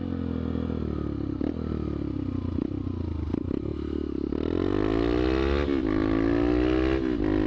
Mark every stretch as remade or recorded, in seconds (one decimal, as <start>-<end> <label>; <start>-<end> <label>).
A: 0.0-7.5 recorded